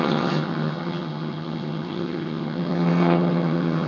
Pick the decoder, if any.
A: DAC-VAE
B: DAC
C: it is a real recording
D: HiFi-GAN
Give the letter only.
D